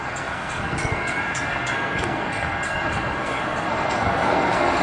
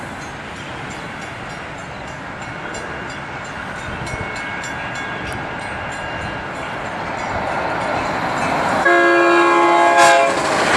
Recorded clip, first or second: second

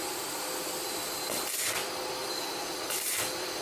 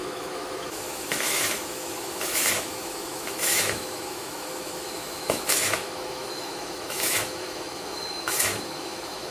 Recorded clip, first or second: first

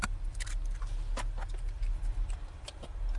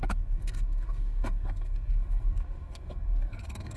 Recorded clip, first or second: first